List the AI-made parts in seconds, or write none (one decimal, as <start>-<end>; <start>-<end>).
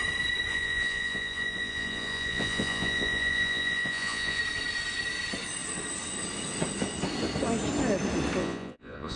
0.5-4.4; 8.4-9.2